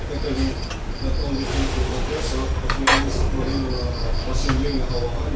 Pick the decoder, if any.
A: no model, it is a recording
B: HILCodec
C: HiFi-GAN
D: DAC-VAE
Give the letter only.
A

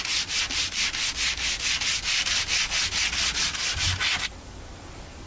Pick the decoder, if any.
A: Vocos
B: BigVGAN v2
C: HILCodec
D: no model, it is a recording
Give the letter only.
D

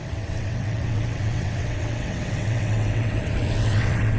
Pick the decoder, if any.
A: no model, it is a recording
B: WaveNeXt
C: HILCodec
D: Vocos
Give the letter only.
B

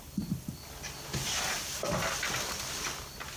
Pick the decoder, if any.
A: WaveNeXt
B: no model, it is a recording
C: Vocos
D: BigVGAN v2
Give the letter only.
B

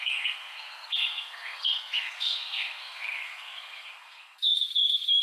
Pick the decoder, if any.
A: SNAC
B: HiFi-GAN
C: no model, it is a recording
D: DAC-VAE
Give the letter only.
A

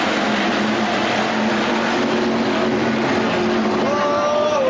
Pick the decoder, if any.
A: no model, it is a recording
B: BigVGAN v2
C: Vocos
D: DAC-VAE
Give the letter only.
A